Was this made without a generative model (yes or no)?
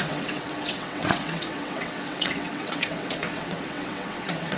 no